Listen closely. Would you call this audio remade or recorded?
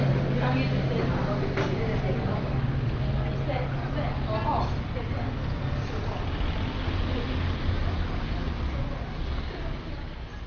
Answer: recorded